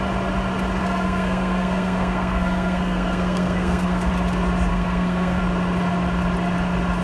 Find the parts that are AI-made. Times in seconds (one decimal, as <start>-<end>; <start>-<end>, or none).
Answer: 0.8-4.1; 4.7-5.4